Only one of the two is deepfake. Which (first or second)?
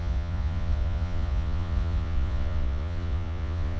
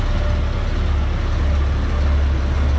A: first